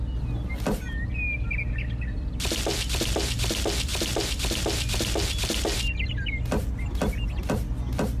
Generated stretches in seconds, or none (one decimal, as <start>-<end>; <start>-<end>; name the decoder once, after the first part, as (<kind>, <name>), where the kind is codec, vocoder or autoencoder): none